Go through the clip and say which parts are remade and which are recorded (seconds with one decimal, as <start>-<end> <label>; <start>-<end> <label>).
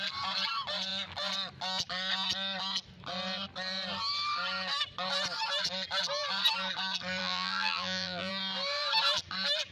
0.0-7.2 recorded; 7.2-8.3 remade; 8.3-9.7 recorded